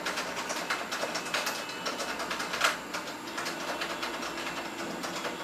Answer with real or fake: real